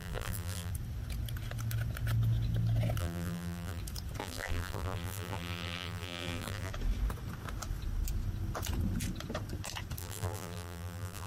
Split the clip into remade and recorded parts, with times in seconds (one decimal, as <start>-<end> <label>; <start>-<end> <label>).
0.0-0.7 remade; 0.7-3.0 recorded; 3.0-3.8 remade; 3.8-4.2 recorded; 4.2-6.7 remade; 6.7-10.0 recorded; 10.0-11.3 remade